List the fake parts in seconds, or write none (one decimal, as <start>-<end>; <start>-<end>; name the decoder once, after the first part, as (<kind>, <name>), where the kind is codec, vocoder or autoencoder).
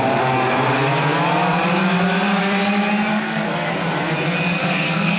3.1-3.7 (codec, SNAC); 4.6-5.2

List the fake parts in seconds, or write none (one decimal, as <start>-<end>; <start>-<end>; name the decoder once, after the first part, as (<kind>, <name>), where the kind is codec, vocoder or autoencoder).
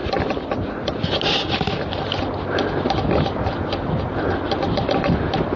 none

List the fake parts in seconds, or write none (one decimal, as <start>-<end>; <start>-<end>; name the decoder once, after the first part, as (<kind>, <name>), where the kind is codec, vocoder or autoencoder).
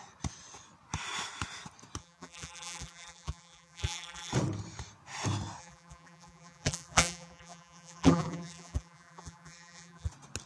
2.0-4.3 (vocoder, BigVGAN v2); 5.6-10.1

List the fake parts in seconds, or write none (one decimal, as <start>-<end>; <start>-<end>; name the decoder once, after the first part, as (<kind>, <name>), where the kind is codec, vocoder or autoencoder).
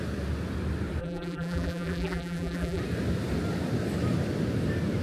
1.0-2.8 (vocoder, BigVGAN v2)